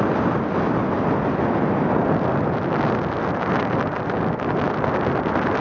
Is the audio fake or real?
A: real